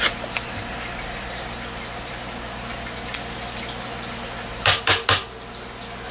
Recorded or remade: recorded